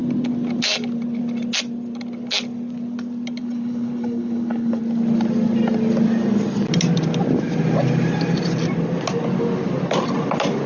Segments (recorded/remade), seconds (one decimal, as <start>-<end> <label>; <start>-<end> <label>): 0.0-3.4 recorded; 3.4-4.8 remade; 4.8-10.7 recorded